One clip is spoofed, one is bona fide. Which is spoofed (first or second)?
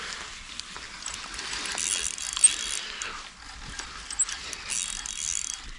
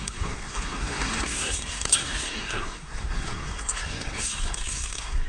second